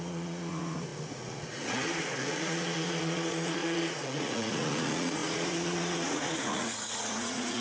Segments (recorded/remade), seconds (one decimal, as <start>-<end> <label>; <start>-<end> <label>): 0.0-7.6 remade